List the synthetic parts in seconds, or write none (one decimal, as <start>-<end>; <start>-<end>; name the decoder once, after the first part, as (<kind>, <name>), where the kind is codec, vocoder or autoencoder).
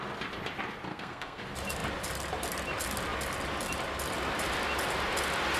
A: 0.9-1.4 (codec, SNAC)